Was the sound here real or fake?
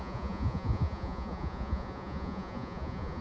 fake